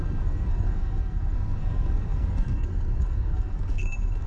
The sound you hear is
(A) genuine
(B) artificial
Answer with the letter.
B